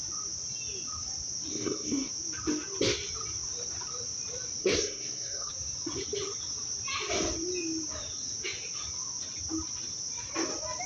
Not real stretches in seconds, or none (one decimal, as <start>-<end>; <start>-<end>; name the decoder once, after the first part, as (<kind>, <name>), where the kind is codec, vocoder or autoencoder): 1.5-2.1 (codec, SNAC); 4.6-5.5